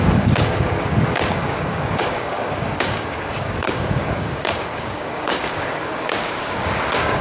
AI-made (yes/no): yes